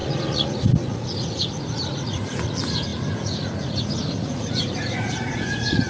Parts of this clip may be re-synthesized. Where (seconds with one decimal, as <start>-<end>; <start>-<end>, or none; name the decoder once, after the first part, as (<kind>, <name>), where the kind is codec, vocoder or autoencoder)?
0.0-5.9 (vocoder, Vocos)